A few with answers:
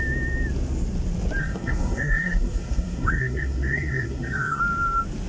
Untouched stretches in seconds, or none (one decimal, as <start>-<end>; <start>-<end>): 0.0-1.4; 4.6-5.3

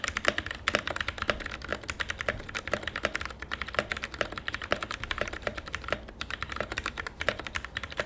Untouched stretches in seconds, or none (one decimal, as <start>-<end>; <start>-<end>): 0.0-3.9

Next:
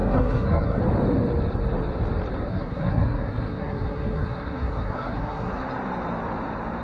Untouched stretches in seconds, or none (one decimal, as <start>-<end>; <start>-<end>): 0.8-2.5; 5.5-6.8